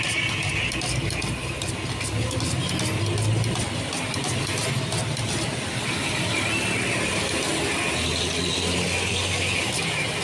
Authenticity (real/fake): real